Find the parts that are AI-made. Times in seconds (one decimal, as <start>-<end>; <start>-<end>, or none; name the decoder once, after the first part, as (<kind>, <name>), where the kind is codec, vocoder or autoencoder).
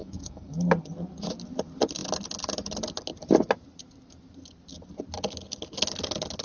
0.0-0.6 (autoencoder, DAC-VAE)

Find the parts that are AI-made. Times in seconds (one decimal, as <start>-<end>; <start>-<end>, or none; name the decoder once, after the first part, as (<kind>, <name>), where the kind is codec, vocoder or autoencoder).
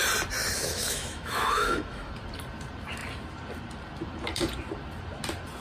0.4-2.1 (autoencoder, DAC-VAE)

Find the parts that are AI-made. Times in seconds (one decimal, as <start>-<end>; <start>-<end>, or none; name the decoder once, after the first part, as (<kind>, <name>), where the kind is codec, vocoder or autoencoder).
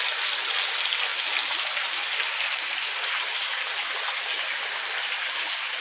none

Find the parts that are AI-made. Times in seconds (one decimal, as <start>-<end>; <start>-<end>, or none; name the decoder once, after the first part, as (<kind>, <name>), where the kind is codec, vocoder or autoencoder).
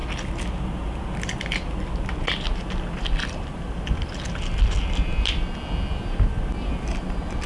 none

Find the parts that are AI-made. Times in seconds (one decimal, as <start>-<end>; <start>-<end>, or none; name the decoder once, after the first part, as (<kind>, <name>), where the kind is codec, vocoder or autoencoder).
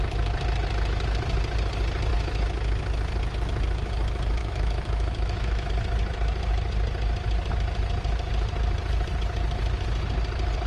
4.4-5.7 (autoencoder, DAC-VAE)